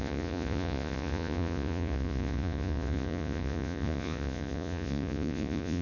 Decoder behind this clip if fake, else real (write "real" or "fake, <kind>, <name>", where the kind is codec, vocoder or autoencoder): fake, vocoder, Vocos